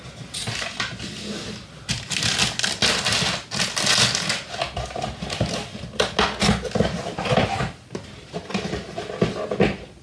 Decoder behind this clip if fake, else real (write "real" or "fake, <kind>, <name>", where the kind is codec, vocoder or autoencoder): real